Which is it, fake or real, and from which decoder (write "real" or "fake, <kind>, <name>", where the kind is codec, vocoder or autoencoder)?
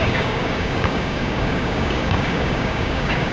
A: fake, codec, DAC